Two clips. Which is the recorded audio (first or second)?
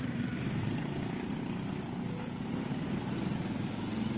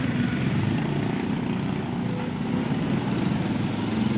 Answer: second